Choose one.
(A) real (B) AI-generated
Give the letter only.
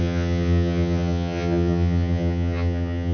B